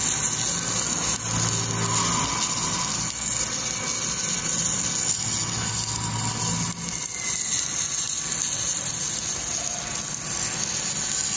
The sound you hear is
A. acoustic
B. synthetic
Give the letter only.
A